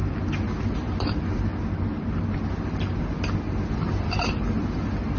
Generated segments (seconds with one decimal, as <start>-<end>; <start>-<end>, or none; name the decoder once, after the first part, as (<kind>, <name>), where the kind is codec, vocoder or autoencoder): none